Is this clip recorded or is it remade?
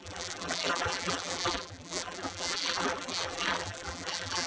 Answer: remade